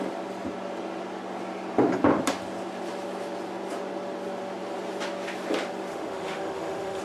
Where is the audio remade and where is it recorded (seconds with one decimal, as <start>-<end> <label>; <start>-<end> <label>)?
0.0-5.9 recorded; 5.9-7.0 remade